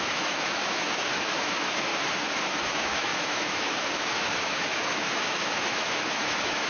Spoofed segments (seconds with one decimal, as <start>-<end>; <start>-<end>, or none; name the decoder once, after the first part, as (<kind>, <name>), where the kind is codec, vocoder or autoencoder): 0.0-1.9 (autoencoder, DAC-VAE); 2.4-6.7